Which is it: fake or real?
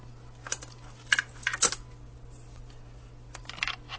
real